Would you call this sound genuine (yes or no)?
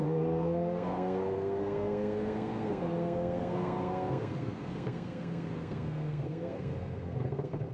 no